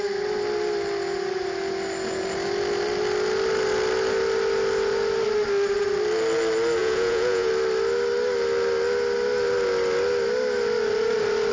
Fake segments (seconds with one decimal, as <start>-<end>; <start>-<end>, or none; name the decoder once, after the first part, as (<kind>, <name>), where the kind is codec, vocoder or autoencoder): 6.8-7.5 (vocoder, Vocos)